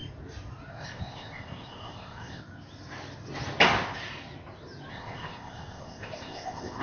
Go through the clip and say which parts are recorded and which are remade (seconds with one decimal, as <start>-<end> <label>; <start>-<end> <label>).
0.0-0.7 recorded; 0.7-2.4 remade; 2.4-4.9 recorded; 4.9-6.8 remade